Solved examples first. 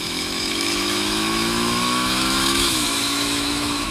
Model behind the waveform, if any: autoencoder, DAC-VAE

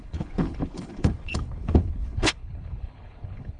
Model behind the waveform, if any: codec, HILCodec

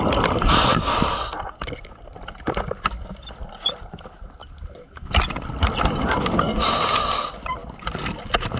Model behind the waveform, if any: none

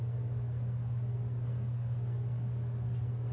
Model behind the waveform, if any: codec, SNAC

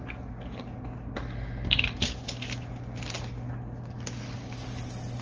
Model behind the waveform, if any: none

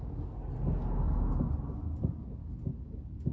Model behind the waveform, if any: none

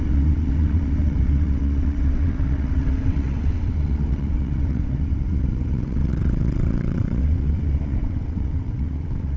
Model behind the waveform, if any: vocoder, WaveNeXt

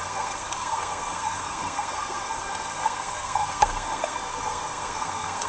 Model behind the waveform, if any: codec, SNAC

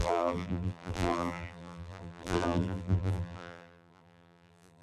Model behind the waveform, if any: vocoder, BigVGAN v2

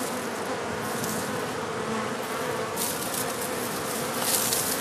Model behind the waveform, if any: none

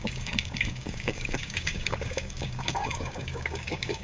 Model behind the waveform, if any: codec, DAC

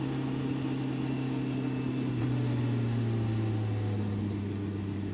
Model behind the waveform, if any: none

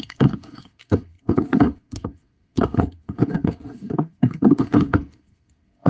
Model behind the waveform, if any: codec, SNAC